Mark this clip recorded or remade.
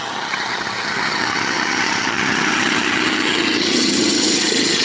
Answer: remade